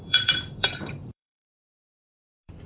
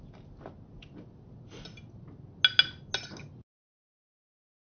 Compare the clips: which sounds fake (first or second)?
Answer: first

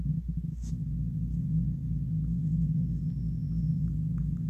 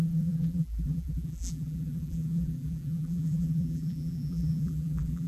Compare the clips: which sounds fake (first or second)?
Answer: second